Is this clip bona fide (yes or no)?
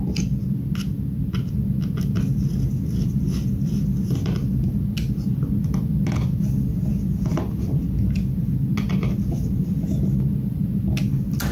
yes